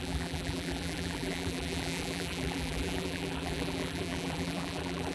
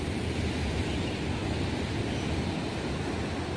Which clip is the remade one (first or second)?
first